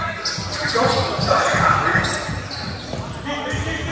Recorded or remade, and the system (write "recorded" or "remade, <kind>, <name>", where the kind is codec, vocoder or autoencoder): recorded